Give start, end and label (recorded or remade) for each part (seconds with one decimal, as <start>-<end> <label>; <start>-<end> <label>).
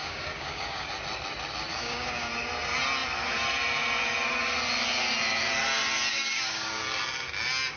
0.0-0.9 remade; 0.9-1.7 recorded; 1.7-2.3 remade; 2.3-6.1 recorded; 6.1-6.8 remade; 6.8-7.8 recorded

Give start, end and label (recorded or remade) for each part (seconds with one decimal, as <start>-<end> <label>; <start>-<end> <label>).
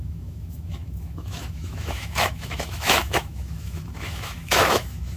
0.0-5.2 remade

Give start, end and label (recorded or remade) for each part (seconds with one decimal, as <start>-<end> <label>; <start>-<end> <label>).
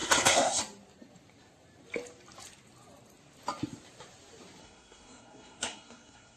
0.0-0.6 remade; 0.6-4.6 recorded; 4.6-6.4 remade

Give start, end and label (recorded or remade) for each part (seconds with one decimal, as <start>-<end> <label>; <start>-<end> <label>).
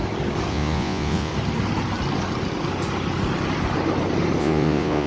0.0-0.5 recorded; 0.5-1.3 remade; 1.3-4.4 recorded; 4.4-5.1 remade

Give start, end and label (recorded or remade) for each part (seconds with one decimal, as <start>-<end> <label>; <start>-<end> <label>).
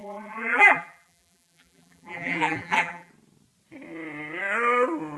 0.0-3.1 remade; 3.1-5.2 recorded